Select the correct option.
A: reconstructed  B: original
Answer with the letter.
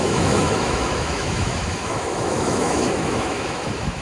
A